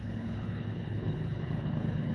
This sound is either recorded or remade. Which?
remade